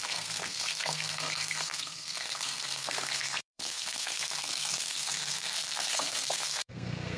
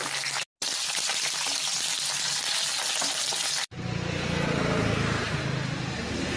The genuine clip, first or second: second